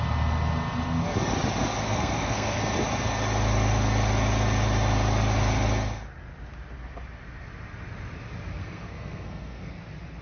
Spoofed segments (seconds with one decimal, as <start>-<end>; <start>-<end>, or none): 1.8-2.6; 8.6-9.7